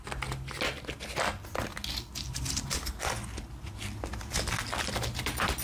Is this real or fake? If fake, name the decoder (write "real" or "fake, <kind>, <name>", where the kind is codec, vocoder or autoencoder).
real